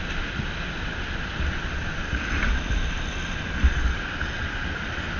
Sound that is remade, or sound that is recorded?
recorded